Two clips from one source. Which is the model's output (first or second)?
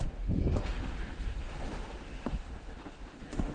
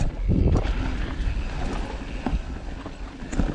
first